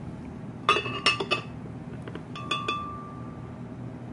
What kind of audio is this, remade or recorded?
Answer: recorded